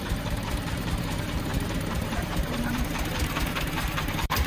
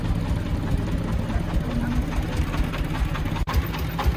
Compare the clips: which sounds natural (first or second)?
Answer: second